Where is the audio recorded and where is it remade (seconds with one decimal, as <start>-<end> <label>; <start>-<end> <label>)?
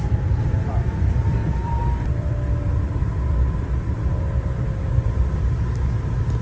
0.0-6.4 remade